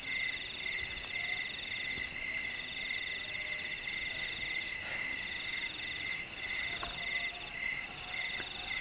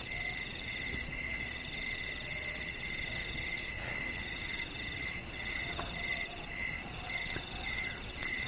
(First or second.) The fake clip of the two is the second